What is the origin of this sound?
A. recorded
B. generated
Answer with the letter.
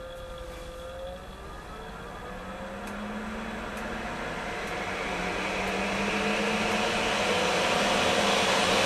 A